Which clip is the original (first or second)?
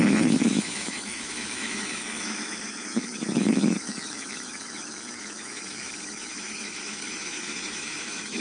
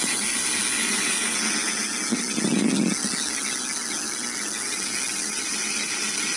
second